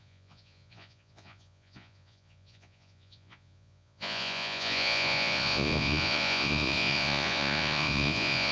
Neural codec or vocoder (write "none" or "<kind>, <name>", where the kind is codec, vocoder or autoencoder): vocoder, Vocos